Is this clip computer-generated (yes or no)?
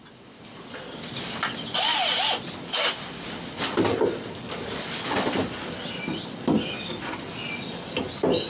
no